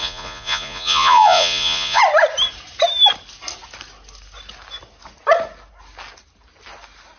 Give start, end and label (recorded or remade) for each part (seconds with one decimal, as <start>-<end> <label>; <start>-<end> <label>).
0.0-2.0 remade; 2.0-7.2 recorded

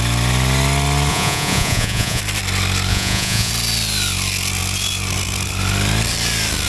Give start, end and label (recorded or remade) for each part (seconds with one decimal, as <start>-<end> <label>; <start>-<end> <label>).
0.0-1.1 recorded; 1.1-2.2 remade; 2.2-2.9 recorded; 2.9-3.5 remade; 3.5-6.7 recorded